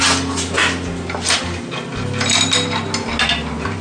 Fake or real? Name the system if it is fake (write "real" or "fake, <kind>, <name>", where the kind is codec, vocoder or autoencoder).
real